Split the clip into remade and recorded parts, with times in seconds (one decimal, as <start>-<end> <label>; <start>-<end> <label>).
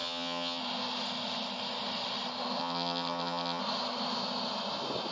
0.0-0.6 remade; 0.6-2.6 recorded; 2.6-3.6 remade; 3.6-5.1 recorded